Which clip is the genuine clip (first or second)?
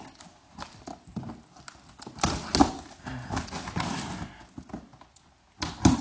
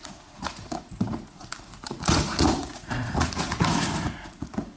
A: first